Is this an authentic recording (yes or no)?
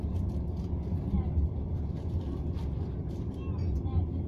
yes